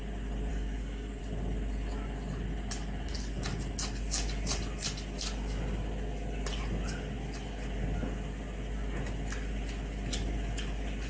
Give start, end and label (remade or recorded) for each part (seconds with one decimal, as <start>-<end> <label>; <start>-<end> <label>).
0.0-0.5 recorded; 0.5-1.2 remade; 1.2-11.1 recorded